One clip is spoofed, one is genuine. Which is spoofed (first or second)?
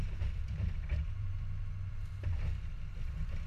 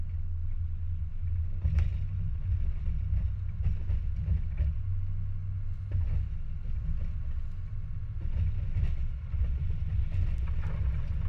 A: first